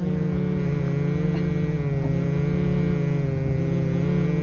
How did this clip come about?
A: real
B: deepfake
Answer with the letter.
A